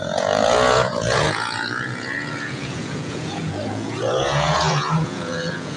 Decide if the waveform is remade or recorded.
remade